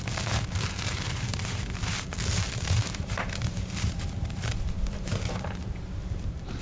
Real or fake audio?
fake